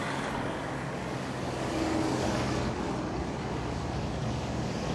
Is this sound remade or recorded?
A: remade